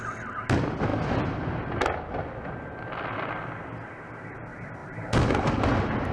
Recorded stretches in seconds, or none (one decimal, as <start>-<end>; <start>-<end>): 0.0-6.1